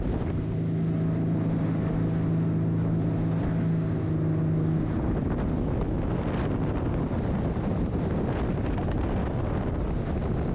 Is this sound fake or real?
real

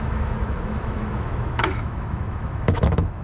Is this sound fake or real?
fake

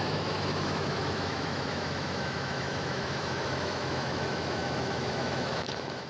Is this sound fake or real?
fake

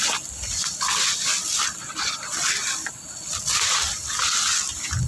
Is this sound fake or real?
real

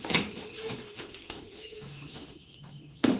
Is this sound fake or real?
fake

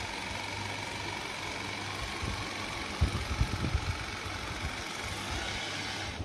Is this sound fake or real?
real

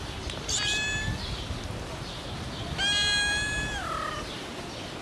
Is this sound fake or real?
real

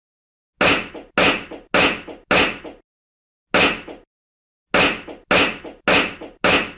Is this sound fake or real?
real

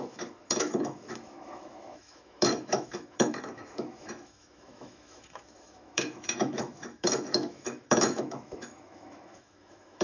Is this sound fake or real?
fake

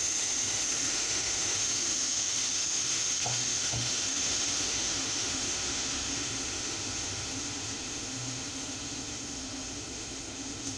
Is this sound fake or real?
fake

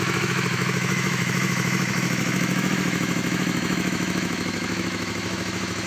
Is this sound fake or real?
fake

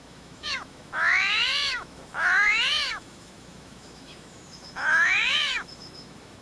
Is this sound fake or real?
fake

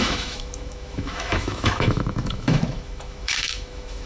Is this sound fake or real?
fake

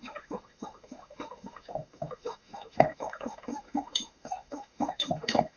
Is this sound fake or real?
fake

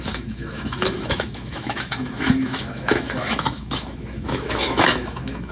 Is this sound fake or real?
fake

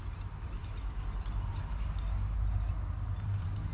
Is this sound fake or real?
real